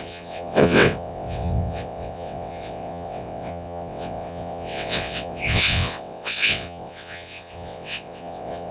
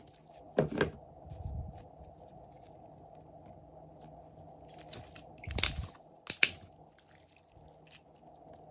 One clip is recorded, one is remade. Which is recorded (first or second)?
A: second